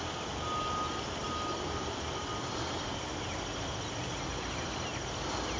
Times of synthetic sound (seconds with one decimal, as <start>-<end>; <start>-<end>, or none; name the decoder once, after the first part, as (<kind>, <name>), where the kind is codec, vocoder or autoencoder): none